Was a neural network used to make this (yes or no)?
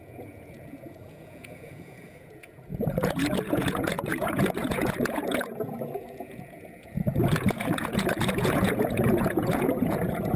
yes